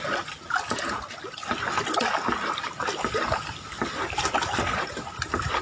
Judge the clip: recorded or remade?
recorded